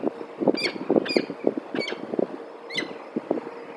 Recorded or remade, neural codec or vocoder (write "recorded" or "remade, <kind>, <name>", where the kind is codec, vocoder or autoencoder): recorded